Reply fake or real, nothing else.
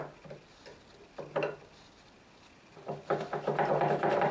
real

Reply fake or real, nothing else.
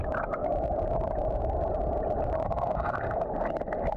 real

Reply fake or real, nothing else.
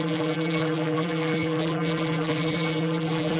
fake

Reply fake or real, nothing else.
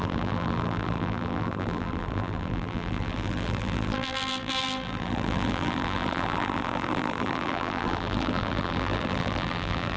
fake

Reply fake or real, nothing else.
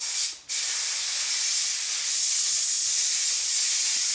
real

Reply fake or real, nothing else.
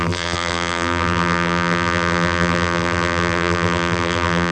fake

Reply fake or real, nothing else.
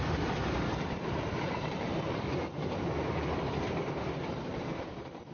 real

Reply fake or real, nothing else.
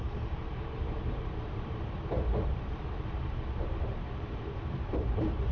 fake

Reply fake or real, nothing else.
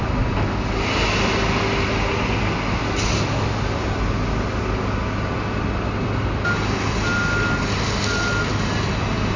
real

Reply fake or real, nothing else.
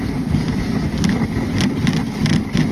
real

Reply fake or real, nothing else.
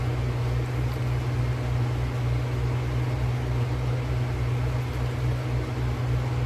real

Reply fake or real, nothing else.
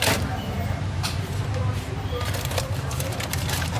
fake